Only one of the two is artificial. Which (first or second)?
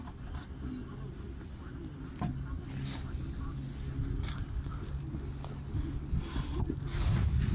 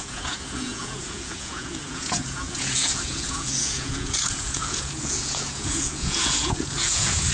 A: second